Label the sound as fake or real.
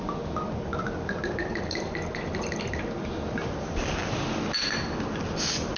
real